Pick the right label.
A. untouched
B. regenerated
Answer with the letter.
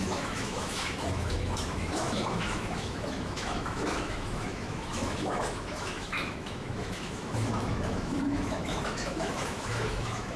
B